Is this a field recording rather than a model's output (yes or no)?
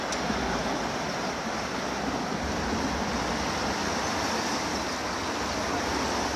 yes